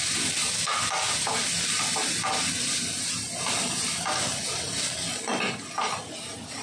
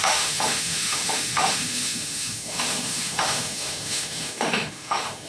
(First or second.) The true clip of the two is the first